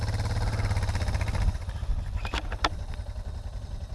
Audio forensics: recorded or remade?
recorded